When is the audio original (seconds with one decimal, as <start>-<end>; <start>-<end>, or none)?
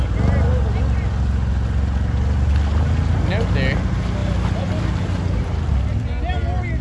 0.0-6.8